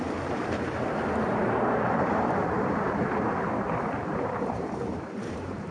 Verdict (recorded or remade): remade